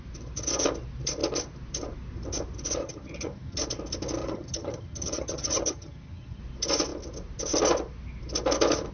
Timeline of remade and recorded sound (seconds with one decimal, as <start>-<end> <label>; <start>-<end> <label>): 0.0-2.8 recorded; 2.8-3.6 remade; 3.6-4.2 recorded; 4.2-6.4 remade; 6.4-8.9 recorded

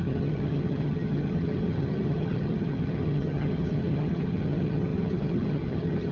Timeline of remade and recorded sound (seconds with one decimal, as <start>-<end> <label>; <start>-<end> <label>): 0.0-6.1 remade

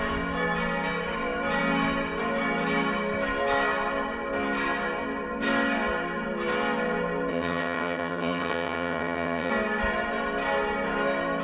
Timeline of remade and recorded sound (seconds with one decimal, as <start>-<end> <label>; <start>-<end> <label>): 0.0-7.3 recorded; 7.3-9.5 remade; 9.5-11.4 recorded

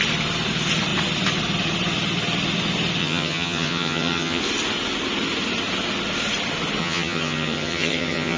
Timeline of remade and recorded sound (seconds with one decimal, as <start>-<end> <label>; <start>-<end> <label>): 0.0-3.0 recorded; 3.0-4.4 remade; 4.4-6.8 recorded; 6.8-8.4 remade

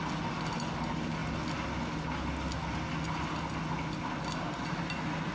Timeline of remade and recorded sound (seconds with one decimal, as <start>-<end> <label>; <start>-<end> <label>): 0.0-5.3 recorded

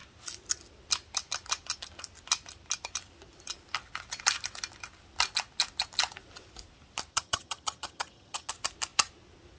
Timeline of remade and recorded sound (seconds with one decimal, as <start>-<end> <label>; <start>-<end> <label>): 0.0-7.1 recorded; 7.1-8.5 remade; 8.5-9.6 recorded

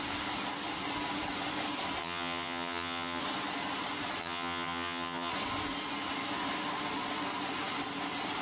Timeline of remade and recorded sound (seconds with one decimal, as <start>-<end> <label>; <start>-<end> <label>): 0.0-2.0 recorded; 2.0-3.2 remade; 3.2-4.2 recorded; 4.2-5.3 remade; 5.3-8.4 recorded

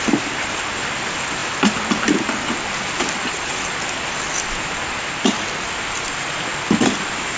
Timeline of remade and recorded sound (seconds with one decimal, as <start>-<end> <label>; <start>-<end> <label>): 0.0-7.4 recorded